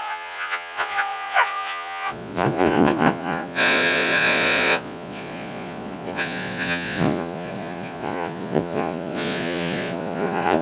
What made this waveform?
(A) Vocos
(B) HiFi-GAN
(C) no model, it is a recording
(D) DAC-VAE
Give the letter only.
A